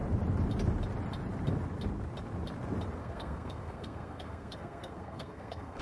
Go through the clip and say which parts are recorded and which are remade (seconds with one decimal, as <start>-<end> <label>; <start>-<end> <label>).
0.0-3.0 recorded; 3.0-5.8 remade